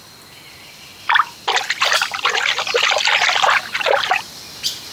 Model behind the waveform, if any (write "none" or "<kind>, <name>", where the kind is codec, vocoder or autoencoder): none